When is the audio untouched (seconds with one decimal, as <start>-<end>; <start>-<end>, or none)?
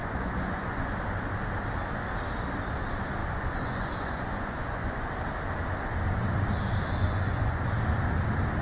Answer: 0.9-3.2; 5.1-7.0; 7.6-8.6